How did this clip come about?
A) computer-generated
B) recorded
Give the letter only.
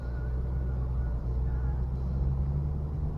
B